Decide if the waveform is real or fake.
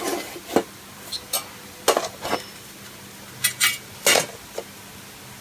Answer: real